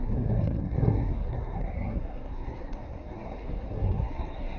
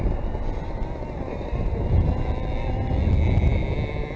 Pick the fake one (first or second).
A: first